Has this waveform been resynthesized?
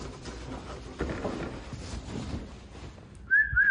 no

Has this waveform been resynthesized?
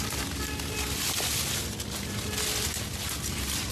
no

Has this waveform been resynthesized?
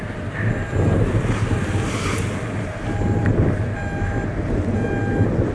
no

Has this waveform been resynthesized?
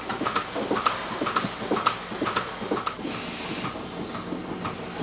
no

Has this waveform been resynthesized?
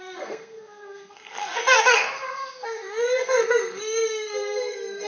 yes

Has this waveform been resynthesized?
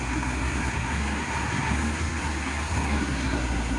yes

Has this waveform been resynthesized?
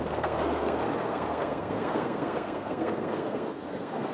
yes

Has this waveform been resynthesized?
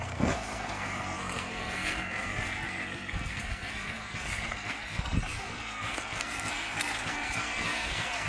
yes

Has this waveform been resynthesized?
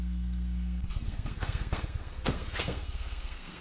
yes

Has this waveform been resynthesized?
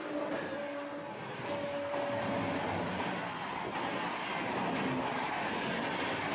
no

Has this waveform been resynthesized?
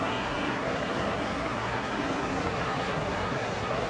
yes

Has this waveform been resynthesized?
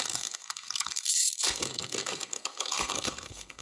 yes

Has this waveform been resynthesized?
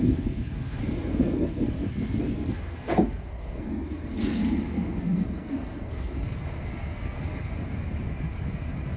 yes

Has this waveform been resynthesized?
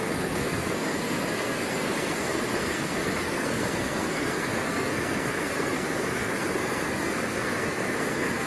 yes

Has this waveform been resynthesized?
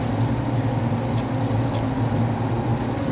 no